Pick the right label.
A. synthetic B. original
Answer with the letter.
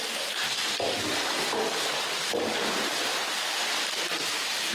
B